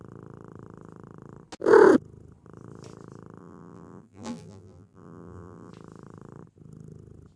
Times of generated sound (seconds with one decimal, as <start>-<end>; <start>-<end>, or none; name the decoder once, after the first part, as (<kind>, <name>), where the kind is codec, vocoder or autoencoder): 3.4-5.7 (vocoder, BigVGAN v2)